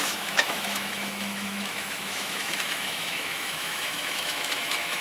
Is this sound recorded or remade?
remade